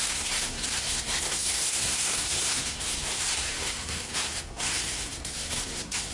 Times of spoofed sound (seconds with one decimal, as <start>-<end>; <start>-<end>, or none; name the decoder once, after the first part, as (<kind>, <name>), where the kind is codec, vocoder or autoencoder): 0.0-6.1 (codec, SNAC)